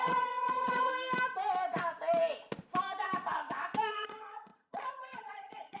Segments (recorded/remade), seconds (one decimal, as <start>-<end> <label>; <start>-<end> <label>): 0.0-0.9 remade; 0.9-3.9 recorded; 3.9-5.8 remade